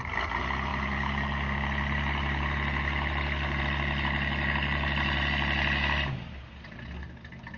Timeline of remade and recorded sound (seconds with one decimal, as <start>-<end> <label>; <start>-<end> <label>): 0.0-7.6 recorded

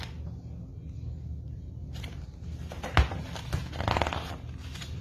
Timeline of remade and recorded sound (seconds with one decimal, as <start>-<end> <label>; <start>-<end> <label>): 0.0-0.7 recorded; 0.7-1.7 remade; 1.7-5.0 recorded

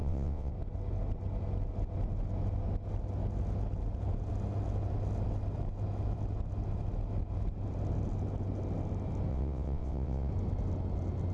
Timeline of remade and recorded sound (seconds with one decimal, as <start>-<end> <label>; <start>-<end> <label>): 0.0-0.5 remade; 0.5-9.3 recorded; 9.3-10.3 remade; 10.3-11.3 recorded

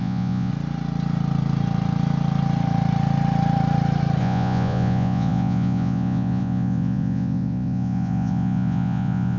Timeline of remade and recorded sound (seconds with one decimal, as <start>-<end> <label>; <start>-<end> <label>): 0.0-0.5 remade; 0.5-4.2 recorded; 4.2-9.4 remade

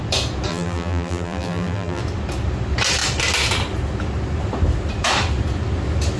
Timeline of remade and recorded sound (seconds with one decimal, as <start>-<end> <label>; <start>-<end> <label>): 0.0-0.5 recorded; 0.5-2.0 remade; 2.0-6.2 recorded

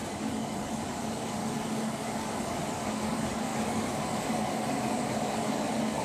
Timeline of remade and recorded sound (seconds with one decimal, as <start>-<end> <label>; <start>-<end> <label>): 0.0-6.0 remade